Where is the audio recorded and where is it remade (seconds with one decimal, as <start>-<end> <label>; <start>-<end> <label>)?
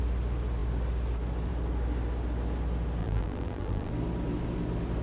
0.0-3.0 recorded; 3.0-3.9 remade; 3.9-5.0 recorded